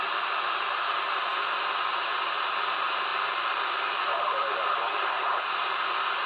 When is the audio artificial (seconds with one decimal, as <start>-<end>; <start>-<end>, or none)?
none

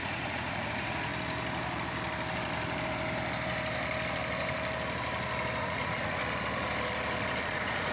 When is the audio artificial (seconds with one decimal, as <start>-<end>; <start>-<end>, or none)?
0.0-1.1; 5.6-6.2; 7.4-7.9